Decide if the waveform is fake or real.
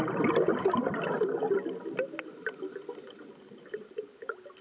real